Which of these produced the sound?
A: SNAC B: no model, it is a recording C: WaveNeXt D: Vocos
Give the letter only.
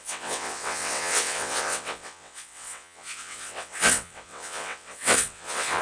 C